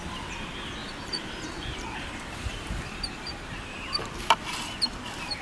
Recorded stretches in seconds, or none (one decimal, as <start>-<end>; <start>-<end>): 0.0-0.8; 4.0-5.4